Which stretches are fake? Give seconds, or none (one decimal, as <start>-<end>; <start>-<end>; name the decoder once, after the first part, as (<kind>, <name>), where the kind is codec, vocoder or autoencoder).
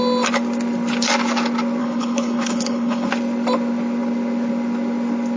1.8-3.1 (codec, HILCodec)